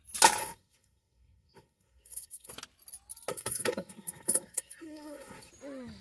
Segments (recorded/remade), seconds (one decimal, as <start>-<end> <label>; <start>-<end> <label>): 0.0-0.4 recorded; 0.4-2.5 remade; 2.5-3.3 recorded; 3.3-5.5 remade; 5.5-6.0 recorded